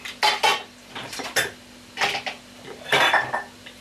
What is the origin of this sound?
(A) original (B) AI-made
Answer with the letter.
A